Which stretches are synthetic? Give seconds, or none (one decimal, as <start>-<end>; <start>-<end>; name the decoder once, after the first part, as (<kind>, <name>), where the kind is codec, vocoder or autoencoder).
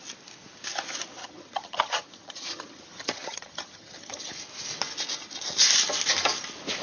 1.2-4.3 (vocoder, HiFi-GAN)